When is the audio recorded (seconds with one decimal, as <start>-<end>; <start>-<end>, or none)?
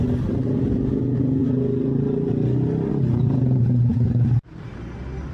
0.0-5.3